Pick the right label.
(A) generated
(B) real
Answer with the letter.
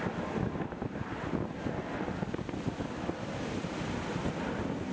B